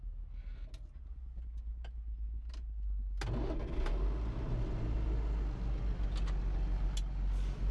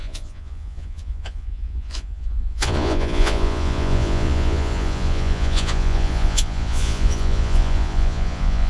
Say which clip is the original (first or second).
first